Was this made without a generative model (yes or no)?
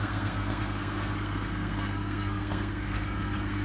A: no